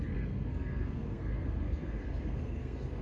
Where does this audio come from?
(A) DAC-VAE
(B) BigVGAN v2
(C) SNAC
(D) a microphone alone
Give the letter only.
C